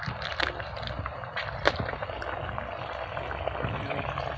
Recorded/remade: recorded